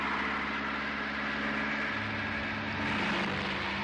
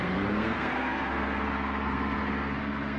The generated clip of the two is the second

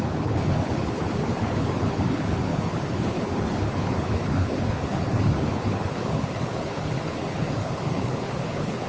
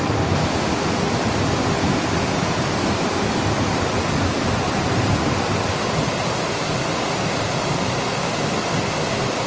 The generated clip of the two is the first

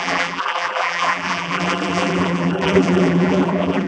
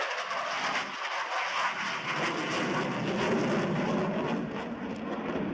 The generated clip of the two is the first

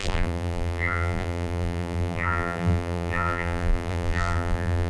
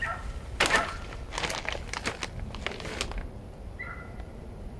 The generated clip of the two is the first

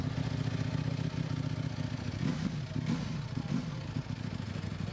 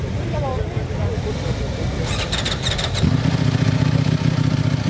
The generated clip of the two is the second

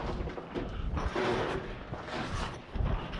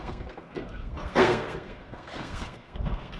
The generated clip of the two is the second